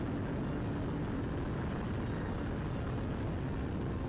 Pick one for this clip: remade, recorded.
recorded